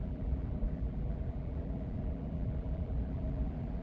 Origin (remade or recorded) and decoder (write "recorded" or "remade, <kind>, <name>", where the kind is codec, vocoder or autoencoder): remade, vocoder, BigVGAN v2